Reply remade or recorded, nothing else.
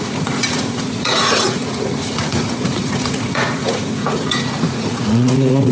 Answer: remade